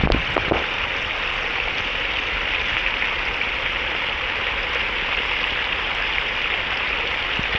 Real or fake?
real